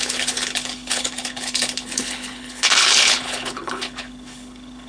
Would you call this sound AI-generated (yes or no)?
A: yes